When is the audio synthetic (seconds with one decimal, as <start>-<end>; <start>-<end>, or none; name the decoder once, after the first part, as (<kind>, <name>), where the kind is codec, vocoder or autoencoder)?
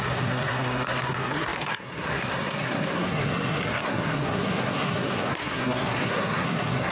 0.0-6.9 (codec, SNAC)